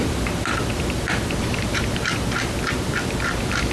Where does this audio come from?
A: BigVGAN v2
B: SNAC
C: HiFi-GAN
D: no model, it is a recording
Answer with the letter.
A